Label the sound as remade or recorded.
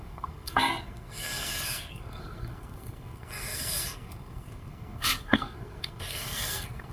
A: remade